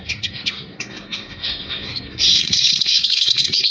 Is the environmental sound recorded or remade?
remade